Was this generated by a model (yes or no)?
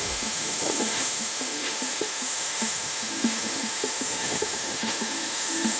yes